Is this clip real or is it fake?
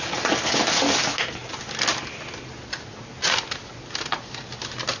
real